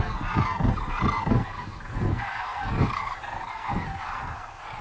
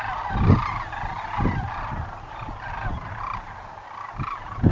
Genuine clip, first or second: second